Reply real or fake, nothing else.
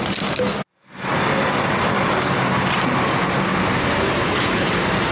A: real